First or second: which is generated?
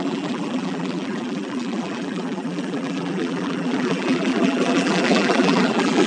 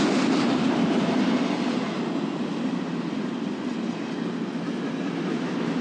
first